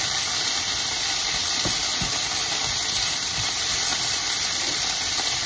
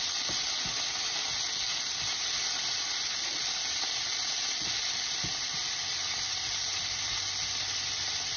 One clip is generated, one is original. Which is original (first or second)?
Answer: second